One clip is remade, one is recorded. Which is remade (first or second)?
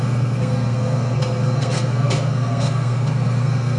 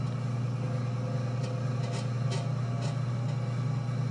first